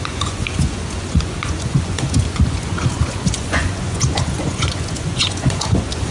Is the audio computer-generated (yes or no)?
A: yes